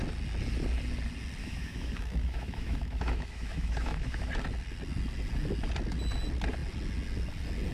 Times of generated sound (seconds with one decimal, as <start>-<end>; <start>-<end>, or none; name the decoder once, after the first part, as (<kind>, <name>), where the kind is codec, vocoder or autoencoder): 1.4-4.3 (autoencoder, DAC-VAE)